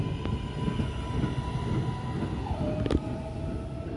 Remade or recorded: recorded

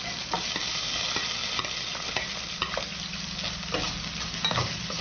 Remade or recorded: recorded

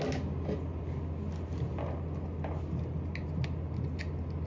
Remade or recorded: recorded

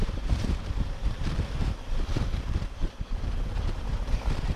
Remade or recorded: remade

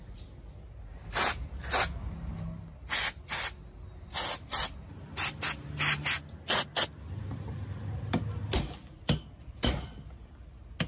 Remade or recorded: recorded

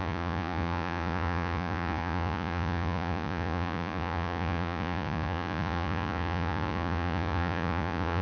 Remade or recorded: remade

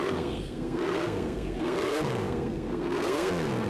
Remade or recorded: remade